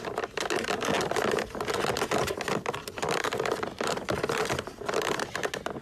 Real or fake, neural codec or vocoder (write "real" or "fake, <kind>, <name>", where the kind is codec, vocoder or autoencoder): real